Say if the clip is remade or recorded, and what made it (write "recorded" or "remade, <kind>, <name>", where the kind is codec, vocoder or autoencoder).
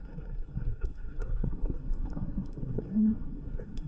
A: remade, codec, SNAC